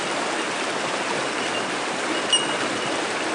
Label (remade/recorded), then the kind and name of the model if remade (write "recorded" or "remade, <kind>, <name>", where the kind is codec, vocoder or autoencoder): recorded